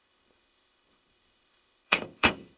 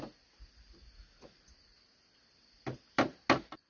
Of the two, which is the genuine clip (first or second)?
second